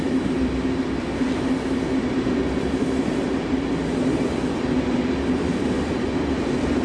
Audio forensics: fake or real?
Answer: real